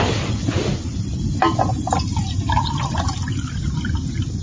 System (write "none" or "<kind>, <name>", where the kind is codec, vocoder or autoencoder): none